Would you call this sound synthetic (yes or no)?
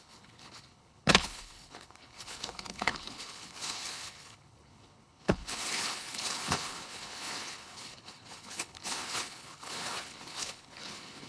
yes